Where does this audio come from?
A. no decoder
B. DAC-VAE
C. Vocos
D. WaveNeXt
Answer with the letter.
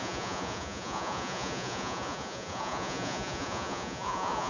C